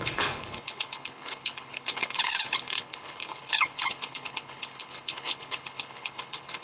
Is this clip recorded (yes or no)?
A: no